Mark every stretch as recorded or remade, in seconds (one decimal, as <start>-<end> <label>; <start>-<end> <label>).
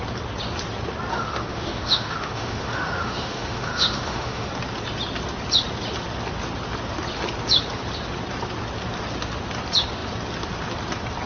0.0-1.1 recorded; 1.1-4.5 remade; 4.5-11.3 recorded